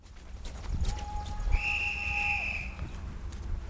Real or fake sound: real